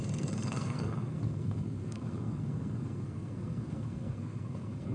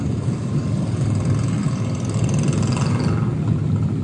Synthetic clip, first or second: first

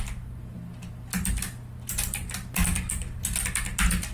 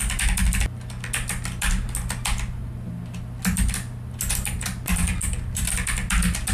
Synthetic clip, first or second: first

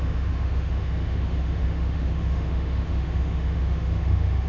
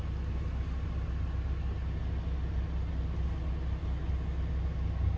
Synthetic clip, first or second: first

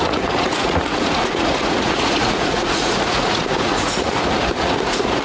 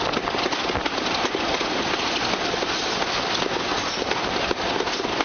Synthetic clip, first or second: first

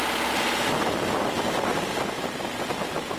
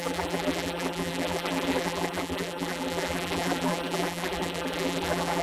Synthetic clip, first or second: second